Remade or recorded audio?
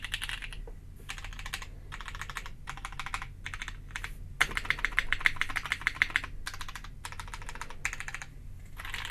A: recorded